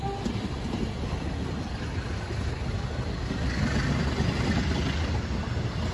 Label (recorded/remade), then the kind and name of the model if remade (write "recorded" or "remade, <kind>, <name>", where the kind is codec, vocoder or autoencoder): recorded